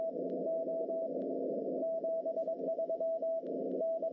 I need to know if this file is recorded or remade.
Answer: recorded